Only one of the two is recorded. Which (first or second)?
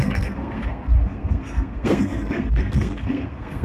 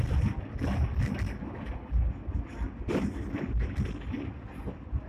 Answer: second